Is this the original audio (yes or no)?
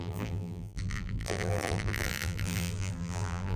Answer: no